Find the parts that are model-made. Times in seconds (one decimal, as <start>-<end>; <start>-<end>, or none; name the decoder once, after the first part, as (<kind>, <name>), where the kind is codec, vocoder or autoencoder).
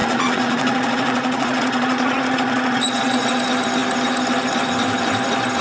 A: 0.0-3.4 (vocoder, Vocos)